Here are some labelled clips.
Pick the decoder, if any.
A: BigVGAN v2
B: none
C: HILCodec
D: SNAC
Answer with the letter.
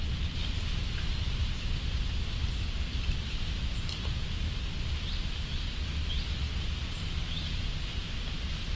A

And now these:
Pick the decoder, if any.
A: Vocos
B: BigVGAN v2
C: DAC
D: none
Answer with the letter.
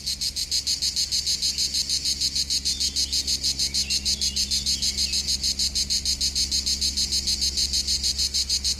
D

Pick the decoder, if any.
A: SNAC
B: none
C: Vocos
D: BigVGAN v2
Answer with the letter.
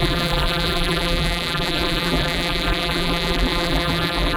D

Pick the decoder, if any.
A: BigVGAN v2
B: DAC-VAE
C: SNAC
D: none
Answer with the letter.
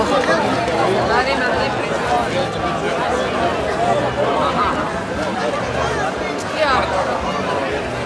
D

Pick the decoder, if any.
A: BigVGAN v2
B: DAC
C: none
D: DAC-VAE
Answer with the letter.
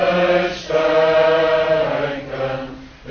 C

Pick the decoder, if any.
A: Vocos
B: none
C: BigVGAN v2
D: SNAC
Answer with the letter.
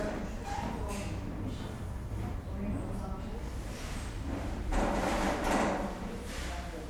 C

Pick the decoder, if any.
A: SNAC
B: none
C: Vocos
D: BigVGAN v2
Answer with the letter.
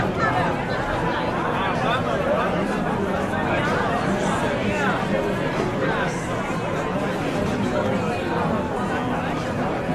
B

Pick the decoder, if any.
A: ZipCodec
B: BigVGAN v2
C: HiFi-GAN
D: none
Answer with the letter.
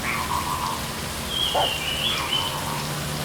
D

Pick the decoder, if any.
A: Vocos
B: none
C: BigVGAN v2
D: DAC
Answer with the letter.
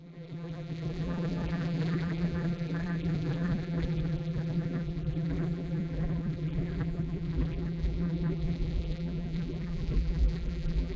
C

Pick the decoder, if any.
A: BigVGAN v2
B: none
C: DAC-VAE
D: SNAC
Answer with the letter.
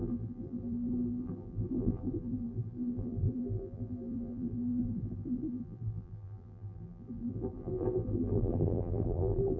A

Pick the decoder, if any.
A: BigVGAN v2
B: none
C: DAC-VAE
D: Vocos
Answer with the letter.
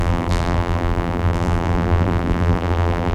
A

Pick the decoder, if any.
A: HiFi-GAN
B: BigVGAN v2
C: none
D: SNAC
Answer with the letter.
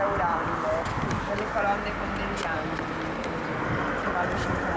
C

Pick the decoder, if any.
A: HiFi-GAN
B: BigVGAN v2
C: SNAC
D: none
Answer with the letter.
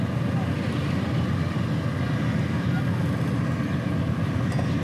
D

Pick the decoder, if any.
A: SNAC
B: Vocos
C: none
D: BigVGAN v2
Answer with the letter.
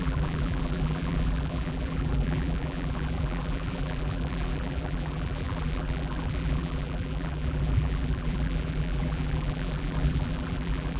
D